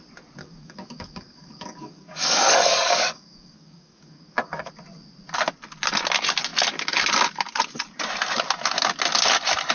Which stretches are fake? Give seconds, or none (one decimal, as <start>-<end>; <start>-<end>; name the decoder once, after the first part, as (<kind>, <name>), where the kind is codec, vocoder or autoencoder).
0.4-4.7 (codec, DAC)